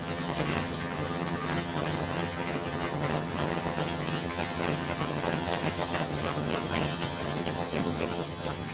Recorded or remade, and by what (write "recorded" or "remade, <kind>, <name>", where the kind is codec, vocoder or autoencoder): remade, vocoder, HiFi-GAN